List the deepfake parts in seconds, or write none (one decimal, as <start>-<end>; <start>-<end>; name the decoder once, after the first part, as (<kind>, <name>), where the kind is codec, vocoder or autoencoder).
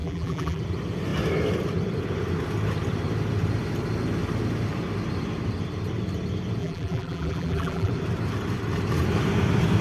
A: 0.0-0.6 (vocoder, BigVGAN v2); 6.6-7.9